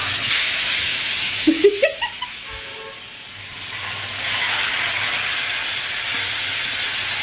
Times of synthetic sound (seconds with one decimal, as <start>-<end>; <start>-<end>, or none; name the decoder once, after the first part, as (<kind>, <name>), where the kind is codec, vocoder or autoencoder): 0.0-2.7 (autoencoder, DAC-VAE)